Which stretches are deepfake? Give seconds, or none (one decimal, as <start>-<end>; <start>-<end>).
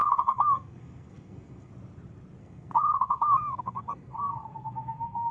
0.0-1.7; 2.4-5.3